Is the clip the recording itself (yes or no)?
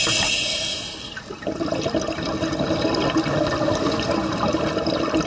yes